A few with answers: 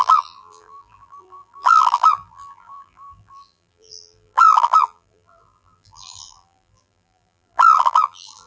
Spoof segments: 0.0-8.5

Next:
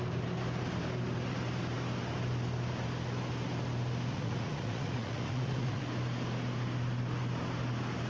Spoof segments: 4.1-5.8

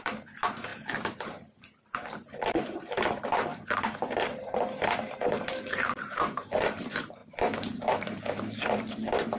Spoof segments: 0.0-9.4

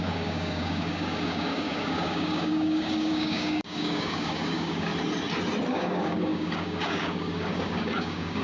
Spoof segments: 0.0-4.9; 5.7-8.4